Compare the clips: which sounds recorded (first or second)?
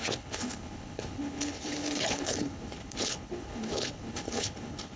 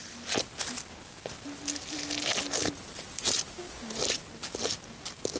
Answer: second